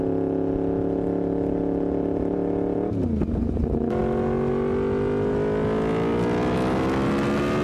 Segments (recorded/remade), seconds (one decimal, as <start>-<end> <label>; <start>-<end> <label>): 0.0-7.6 recorded